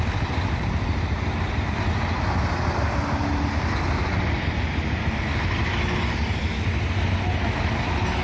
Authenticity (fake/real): real